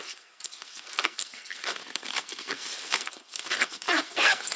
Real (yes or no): no